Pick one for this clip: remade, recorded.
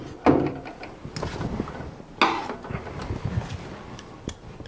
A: recorded